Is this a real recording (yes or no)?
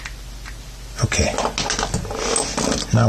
yes